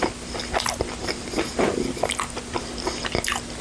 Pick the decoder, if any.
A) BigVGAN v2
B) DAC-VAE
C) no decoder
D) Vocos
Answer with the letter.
C